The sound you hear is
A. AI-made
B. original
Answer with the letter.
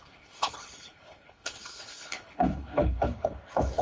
A